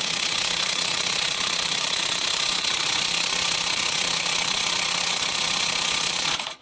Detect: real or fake fake